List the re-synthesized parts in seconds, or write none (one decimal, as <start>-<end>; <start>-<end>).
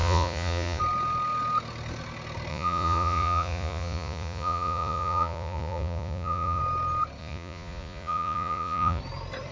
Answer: 0.0-0.8; 2.5-6.6; 7.2-9.0